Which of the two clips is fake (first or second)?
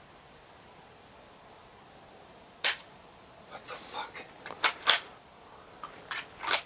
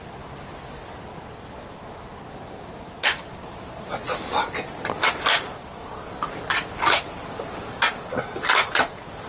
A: first